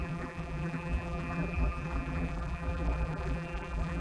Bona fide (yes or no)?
no